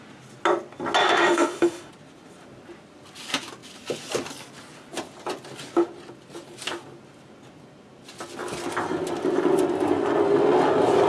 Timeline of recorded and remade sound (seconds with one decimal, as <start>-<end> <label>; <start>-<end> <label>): 0.0-1.0 recorded; 1.0-1.9 remade; 1.9-11.1 recorded